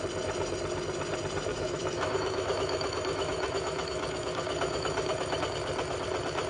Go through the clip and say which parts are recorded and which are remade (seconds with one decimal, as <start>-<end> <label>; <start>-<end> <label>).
0.0-1.5 recorded; 1.5-5.4 remade; 5.4-6.5 recorded